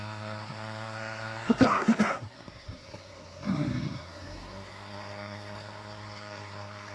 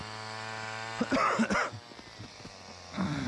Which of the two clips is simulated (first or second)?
first